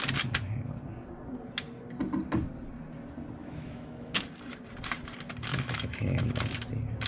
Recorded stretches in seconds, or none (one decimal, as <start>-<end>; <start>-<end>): 0.0-3.4; 4.2-5.5; 6.4-7.1